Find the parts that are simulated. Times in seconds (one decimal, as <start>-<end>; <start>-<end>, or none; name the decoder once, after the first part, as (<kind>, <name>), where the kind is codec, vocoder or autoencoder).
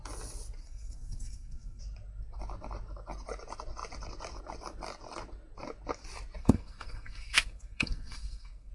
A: 0.6-1.8 (codec, SNAC); 6.4-8.7